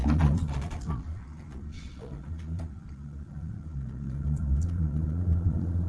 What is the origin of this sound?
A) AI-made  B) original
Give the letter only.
A